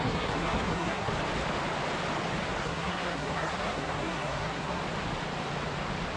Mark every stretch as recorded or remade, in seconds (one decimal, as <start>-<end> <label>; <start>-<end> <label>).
0.0-1.1 remade; 1.1-2.6 recorded; 2.6-4.8 remade; 4.8-6.2 recorded